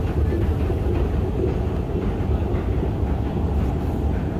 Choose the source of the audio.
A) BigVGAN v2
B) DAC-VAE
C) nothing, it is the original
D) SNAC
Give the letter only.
C